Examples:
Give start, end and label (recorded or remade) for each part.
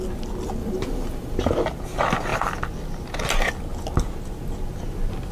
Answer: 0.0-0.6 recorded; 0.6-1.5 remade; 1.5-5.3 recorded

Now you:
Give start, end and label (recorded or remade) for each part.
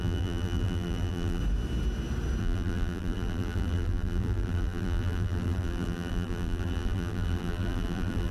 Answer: 0.0-1.4 remade; 1.4-2.4 recorded; 2.4-8.3 remade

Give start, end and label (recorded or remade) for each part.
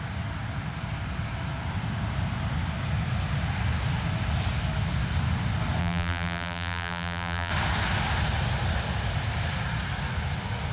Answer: 0.0-5.8 recorded; 5.8-7.5 remade; 7.5-10.7 recorded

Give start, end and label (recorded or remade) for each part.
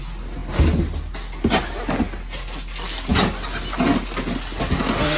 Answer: 0.0-5.2 recorded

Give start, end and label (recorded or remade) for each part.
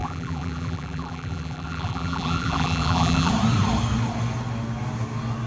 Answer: 0.0-3.3 remade; 3.3-5.5 recorded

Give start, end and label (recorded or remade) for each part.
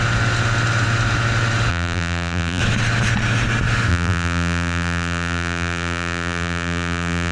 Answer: 0.0-1.7 recorded; 1.7-2.6 remade; 2.6-3.9 recorded; 3.9-7.3 remade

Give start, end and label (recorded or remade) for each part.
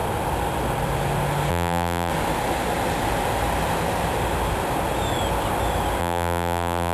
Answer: 0.0-1.5 recorded; 1.5-2.1 remade; 2.1-6.0 recorded; 6.0-6.9 remade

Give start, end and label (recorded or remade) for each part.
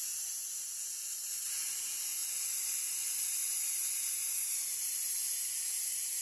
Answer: 0.0-2.2 remade; 2.2-6.2 recorded